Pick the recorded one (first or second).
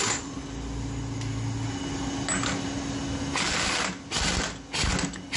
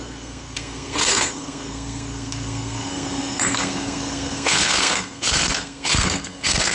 first